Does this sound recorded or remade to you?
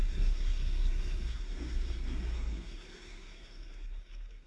remade